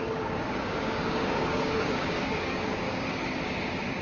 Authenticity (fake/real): fake